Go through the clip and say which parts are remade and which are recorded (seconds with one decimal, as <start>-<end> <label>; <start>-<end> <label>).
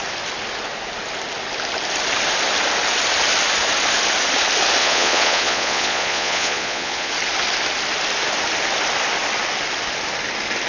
0.0-4.8 recorded; 4.8-7.1 remade; 7.1-10.7 recorded